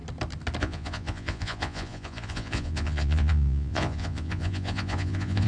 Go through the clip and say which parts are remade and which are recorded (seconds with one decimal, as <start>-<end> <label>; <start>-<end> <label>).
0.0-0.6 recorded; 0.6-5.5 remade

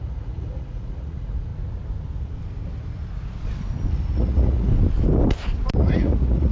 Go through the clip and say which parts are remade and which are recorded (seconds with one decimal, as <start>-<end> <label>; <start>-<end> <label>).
0.0-1.5 remade; 1.5-3.9 recorded; 3.9-4.7 remade; 4.7-5.8 recorded; 5.8-6.5 remade

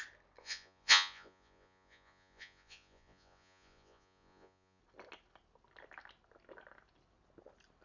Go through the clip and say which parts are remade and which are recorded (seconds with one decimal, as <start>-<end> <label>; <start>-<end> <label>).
0.0-0.4 recorded; 0.4-4.8 remade; 4.8-7.8 recorded